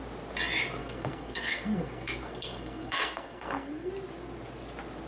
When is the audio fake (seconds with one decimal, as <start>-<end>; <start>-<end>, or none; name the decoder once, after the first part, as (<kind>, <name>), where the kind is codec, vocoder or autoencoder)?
0.8-3.9 (codec, SNAC)